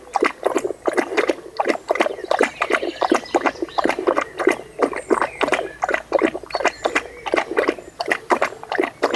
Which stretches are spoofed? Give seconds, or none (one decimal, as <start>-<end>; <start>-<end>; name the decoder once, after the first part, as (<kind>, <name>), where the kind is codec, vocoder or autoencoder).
none